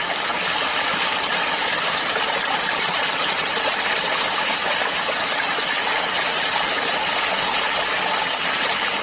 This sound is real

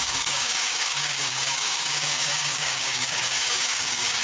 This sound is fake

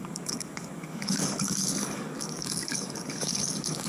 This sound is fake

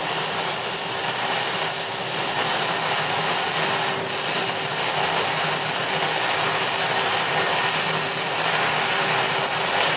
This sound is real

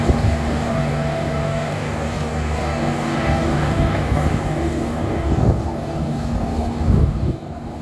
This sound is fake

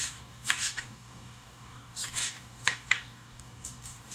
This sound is fake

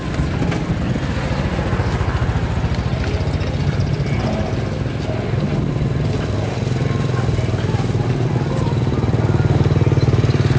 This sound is real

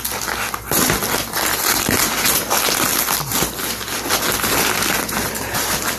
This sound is real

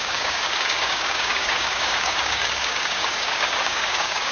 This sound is fake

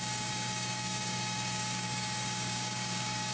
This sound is fake